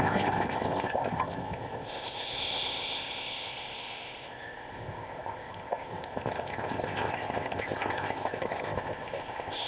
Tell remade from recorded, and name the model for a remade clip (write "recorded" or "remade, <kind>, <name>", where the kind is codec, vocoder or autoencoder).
remade, codec, ZipCodec